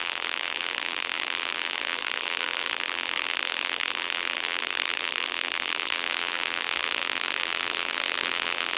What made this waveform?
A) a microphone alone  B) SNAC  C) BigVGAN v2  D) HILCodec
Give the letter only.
C